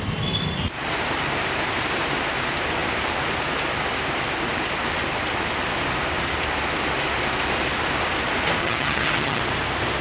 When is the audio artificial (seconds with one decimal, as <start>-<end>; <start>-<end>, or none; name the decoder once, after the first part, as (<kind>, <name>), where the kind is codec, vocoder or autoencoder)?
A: 8.6-9.4 (vocoder, HiFi-GAN)